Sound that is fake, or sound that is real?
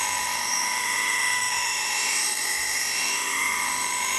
fake